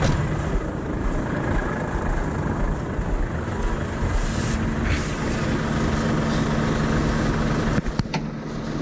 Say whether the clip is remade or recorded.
recorded